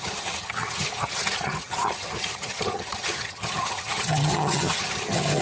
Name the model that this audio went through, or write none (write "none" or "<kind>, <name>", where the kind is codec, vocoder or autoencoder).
vocoder, HiFi-GAN